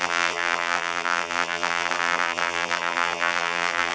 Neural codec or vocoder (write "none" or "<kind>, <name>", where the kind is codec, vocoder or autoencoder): vocoder, BigVGAN v2